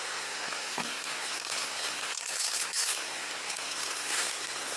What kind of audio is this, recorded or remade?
remade